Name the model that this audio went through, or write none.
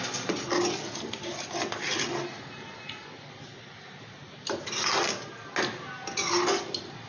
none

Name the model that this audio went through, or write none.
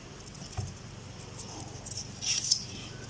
none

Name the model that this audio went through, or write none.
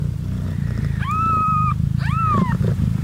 none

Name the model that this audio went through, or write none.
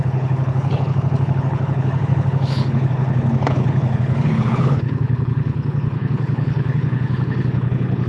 codec, HILCodec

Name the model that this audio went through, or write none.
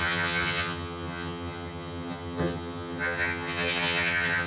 vocoder, HiFi-GAN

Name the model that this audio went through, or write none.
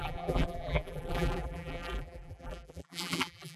vocoder, BigVGAN v2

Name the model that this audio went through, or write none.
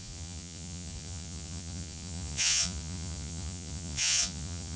vocoder, Vocos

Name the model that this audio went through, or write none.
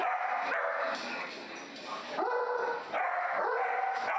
none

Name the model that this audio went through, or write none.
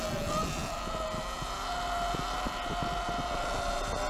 none